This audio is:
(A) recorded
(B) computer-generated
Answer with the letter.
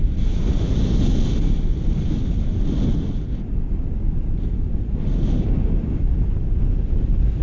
A